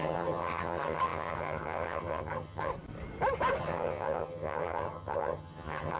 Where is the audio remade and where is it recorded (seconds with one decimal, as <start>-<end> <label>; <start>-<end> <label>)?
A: 0.0-2.7 remade; 2.7-3.6 recorded; 3.6-6.0 remade